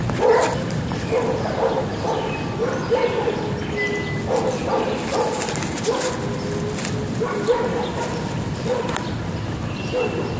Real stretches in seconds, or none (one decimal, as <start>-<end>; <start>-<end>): 0.0-10.4